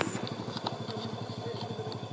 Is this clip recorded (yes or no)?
yes